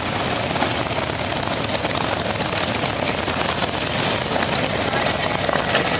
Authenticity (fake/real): real